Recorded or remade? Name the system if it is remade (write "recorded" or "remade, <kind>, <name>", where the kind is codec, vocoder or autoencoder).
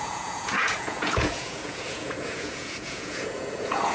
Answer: remade, vocoder, Vocos